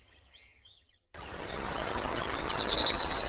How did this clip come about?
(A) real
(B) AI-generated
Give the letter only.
B